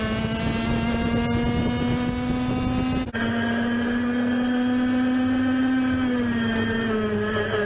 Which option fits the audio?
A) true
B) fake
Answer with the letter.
A